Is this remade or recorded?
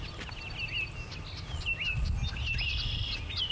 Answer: recorded